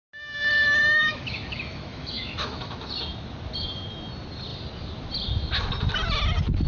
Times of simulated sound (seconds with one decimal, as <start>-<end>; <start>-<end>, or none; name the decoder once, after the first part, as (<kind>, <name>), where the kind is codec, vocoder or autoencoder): 0.8-2.9 (autoencoder, DAC-VAE)

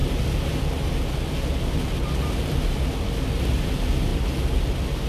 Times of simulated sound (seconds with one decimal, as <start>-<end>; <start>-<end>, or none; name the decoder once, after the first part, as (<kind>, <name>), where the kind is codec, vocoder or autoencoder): none

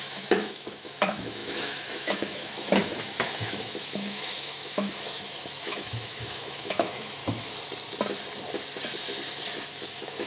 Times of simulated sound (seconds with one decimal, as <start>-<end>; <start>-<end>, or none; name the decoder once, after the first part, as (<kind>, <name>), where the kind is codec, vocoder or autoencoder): 0.0-7.2 (autoencoder, DAC-VAE); 9.7-10.3

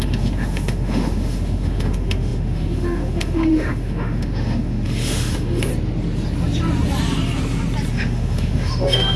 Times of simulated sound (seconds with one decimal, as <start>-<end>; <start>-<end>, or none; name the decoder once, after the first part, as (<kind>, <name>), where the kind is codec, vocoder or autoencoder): 0.0-5.7 (autoencoder, DAC-VAE); 7.9-9.2

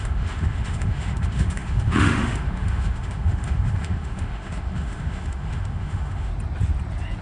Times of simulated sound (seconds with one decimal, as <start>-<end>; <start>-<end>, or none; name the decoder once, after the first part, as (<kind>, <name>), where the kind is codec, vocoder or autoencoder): 0.0-6.3 (autoencoder, DAC-VAE)